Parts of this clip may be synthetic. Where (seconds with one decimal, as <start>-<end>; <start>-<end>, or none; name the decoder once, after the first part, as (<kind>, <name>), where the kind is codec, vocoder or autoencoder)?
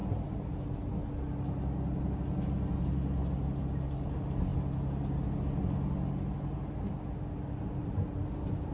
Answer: none